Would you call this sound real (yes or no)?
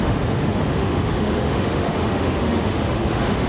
no